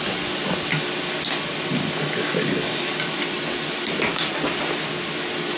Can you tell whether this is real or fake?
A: real